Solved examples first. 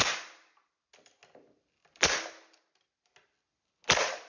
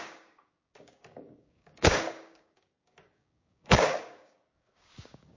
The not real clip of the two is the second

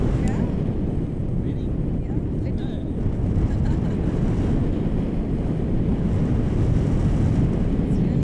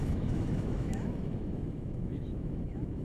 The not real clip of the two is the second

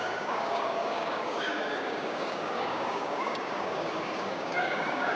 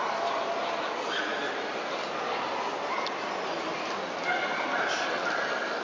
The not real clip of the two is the first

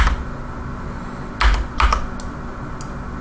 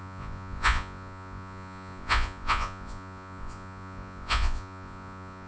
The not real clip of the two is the second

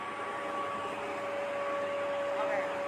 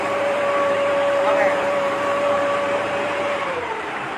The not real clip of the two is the second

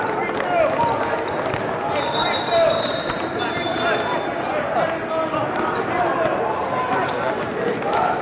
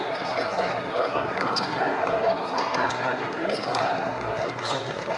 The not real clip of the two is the second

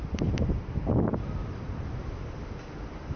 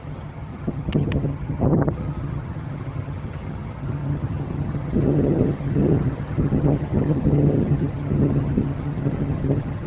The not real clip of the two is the second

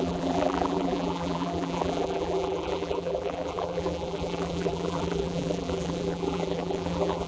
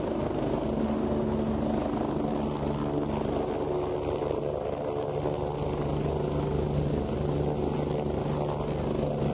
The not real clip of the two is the first